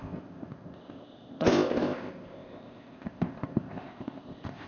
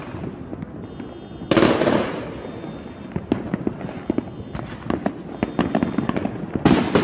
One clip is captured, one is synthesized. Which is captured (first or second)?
second